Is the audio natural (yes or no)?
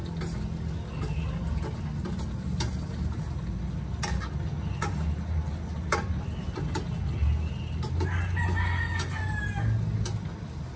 yes